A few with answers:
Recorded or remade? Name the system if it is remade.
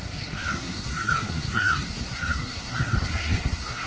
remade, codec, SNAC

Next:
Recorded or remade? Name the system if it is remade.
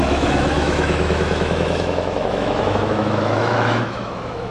remade, autoencoder, DAC-VAE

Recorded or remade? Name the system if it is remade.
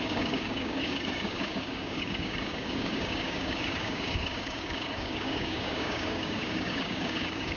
remade, codec, DAC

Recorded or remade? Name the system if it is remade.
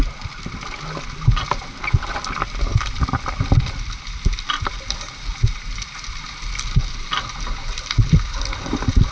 recorded